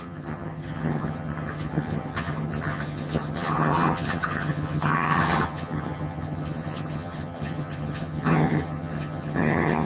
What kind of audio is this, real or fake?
fake